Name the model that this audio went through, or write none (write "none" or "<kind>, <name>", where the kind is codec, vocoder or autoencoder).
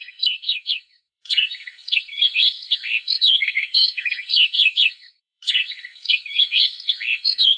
codec, SNAC